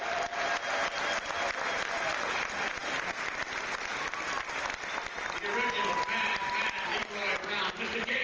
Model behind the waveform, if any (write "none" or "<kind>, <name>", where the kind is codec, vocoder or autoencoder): none